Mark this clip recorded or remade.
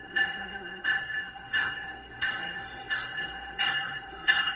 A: remade